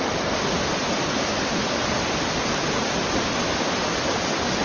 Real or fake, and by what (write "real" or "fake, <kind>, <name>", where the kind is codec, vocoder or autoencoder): real